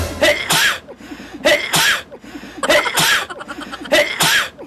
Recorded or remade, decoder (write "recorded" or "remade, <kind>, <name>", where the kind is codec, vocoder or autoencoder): recorded